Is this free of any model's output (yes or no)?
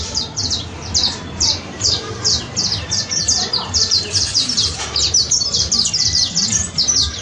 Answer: no